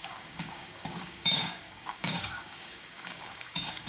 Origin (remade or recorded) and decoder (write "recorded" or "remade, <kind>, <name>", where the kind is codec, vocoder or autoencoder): remade, codec, DAC